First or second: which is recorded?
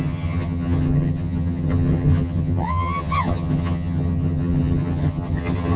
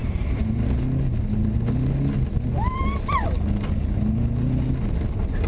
second